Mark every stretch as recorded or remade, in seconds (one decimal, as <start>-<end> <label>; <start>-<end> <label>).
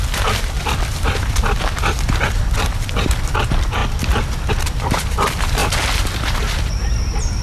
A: 0.0-5.6 remade; 5.6-7.4 recorded